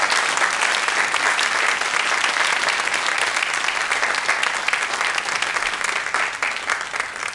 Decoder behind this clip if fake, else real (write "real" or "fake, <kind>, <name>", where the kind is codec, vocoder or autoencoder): real